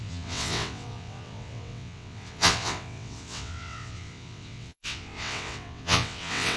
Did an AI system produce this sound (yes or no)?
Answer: yes